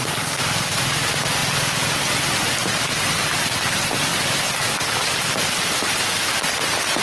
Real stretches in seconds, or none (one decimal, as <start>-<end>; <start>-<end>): 0.8-7.0